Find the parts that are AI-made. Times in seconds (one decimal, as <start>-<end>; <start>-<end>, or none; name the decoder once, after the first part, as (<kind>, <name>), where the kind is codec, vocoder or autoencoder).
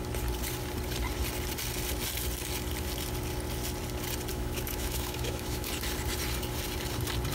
4.3-5.7 (autoencoder, DAC-VAE)